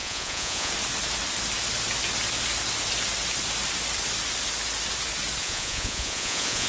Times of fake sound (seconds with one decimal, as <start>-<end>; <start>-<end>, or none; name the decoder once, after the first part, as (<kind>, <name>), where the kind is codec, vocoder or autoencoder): 0.0-0.7 (vocoder, Vocos); 5.4-6.7